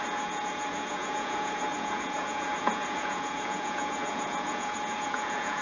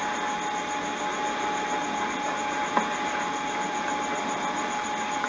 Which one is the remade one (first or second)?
first